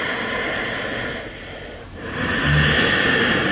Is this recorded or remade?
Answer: recorded